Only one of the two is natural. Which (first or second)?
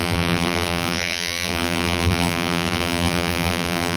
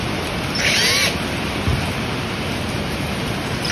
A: second